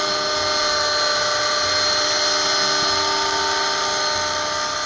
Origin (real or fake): real